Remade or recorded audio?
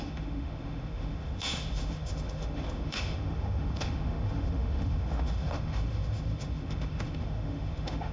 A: remade